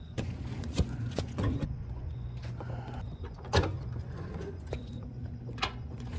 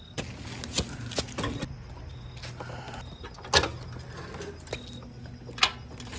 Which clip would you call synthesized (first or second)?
first